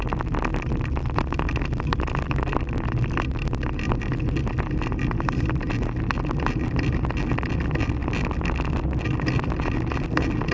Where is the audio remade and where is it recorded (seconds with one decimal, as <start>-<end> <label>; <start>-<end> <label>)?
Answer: 0.0-10.5 recorded